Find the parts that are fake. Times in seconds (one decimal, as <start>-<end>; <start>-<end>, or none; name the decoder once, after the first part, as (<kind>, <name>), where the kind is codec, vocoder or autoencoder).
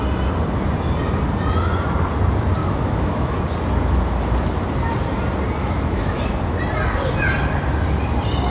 2.6-3.4 (autoencoder, DAC-VAE); 5.6-6.2